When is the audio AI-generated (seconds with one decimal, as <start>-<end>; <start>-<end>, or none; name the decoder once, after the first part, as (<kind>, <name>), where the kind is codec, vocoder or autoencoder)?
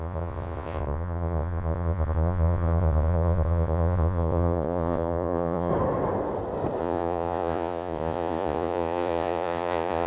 0.0-5.7 (vocoder, Vocos); 6.8-10.1